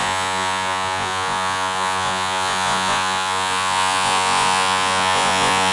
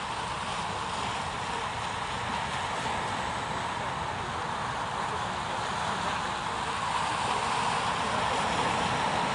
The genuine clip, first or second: second